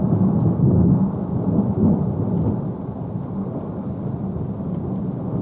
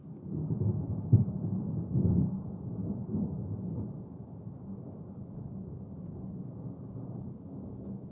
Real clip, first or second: first